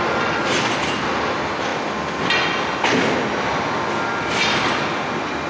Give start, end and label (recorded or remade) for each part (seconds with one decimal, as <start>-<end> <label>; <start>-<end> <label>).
0.0-5.5 recorded